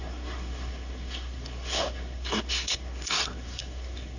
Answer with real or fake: fake